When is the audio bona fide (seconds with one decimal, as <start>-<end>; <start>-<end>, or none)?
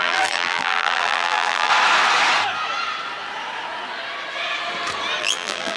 1.7-5.2